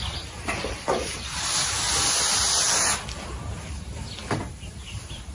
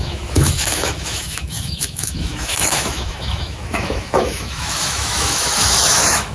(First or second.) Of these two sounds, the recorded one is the first